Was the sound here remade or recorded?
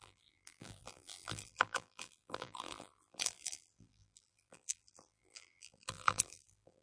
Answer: remade